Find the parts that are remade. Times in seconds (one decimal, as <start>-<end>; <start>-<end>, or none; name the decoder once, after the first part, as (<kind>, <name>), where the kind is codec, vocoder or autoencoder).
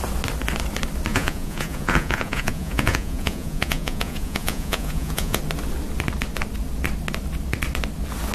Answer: 1.1-5.4 (vocoder, Vocos)